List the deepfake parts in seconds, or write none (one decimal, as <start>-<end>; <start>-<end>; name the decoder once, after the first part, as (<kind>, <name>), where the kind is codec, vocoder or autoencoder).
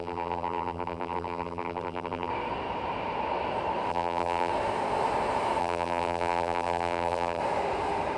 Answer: 0.0-2.3 (vocoder, BigVGAN v2); 3.9-4.5; 5.6-7.4